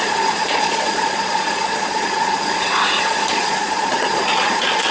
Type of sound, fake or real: fake